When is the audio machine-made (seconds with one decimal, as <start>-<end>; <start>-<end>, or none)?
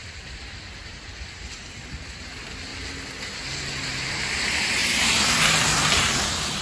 0.0-2.7; 4.0-6.6